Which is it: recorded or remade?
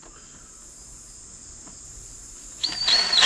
recorded